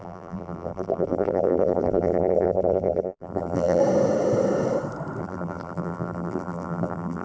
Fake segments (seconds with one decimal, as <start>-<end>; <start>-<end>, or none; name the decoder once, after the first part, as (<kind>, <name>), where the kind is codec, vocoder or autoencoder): 0.0-3.8 (vocoder, BigVGAN v2); 5.2-7.2